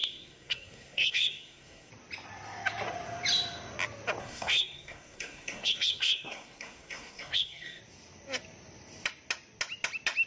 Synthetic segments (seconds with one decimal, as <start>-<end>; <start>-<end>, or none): 0.0-1.9; 4.2-7.8